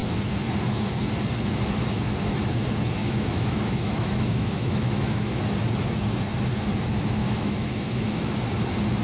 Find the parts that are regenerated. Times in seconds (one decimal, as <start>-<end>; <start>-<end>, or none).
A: 3.0-5.4; 7.2-8.3